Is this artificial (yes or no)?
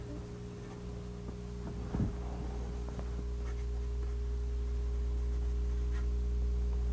no